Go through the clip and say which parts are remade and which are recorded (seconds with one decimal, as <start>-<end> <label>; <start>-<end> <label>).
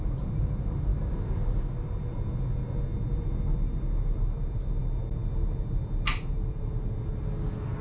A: 0.0-7.8 recorded